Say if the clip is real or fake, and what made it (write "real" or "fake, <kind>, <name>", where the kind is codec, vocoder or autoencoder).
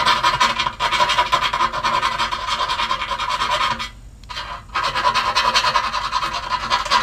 real